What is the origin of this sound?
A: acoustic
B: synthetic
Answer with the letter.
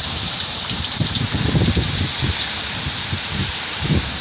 B